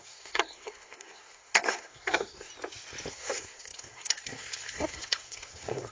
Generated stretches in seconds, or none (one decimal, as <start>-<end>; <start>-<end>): 0.0-2.5; 3.1-5.9